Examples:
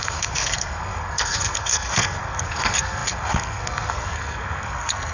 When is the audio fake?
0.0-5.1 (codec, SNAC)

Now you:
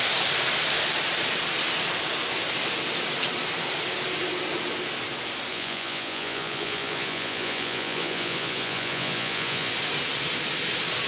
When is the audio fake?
5.5-9.7 (vocoder, Vocos)

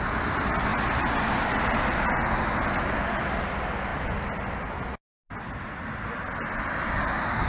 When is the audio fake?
none

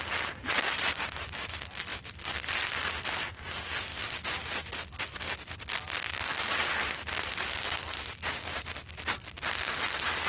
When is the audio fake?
none

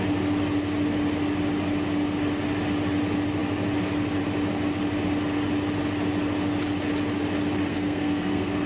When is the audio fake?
7.7-8.7 (codec, SNAC)

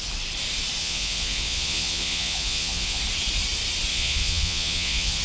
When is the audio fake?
0.8-3.0 (vocoder, Vocos); 3.9-5.2